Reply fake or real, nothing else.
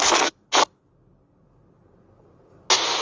real